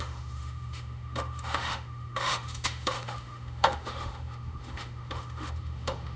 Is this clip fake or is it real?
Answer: fake